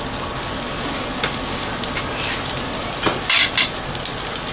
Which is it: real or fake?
real